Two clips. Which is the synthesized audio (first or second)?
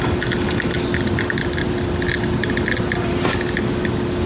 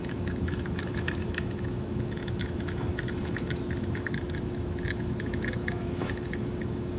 second